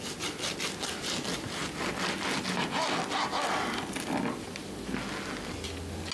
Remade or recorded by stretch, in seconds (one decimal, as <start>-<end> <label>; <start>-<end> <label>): 0.0-6.1 recorded